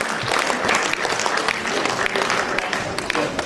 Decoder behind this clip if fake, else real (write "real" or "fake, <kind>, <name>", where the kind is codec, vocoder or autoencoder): real